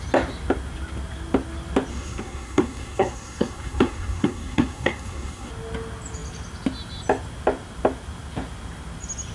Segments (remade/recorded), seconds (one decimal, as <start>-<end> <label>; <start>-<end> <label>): 0.0-1.9 recorded; 1.9-5.5 remade; 5.5-9.3 recorded

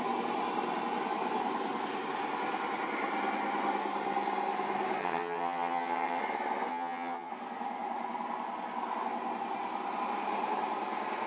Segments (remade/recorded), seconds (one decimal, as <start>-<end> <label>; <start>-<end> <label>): 0.0-5.0 recorded; 5.0-6.2 remade; 6.2-6.7 recorded; 6.7-7.3 remade; 7.3-11.3 recorded

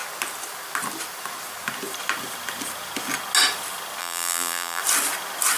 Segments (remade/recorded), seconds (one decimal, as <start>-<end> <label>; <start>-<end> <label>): 0.0-4.0 recorded; 4.0-4.8 remade; 4.8-5.6 recorded

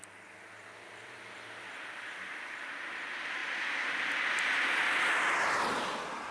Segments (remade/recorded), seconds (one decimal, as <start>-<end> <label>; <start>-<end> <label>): 0.0-3.4 remade; 3.4-3.9 recorded; 3.9-6.3 remade